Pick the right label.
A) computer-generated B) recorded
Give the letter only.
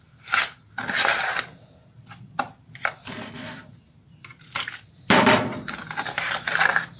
B